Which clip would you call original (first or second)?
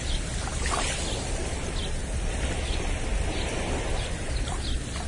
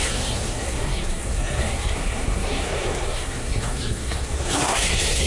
first